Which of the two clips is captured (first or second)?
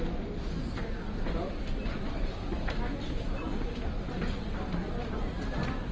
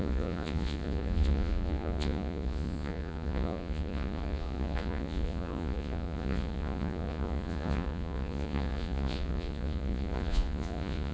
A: first